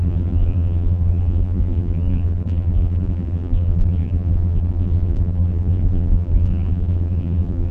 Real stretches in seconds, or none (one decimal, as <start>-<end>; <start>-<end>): none